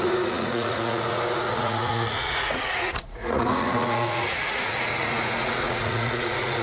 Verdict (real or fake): fake